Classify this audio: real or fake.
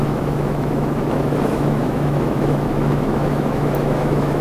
fake